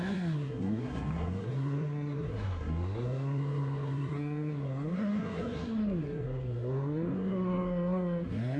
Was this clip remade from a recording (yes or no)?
yes